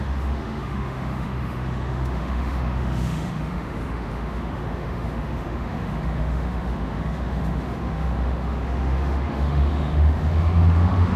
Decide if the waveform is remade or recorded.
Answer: remade